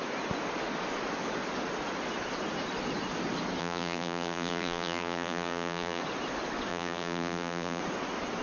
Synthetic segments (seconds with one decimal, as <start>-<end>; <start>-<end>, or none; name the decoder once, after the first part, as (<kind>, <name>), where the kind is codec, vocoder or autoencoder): 3.6-6.0 (vocoder, BigVGAN v2); 6.7-7.8